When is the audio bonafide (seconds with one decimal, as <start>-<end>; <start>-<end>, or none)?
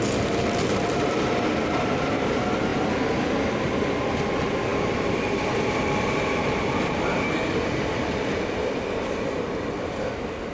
0.0-10.5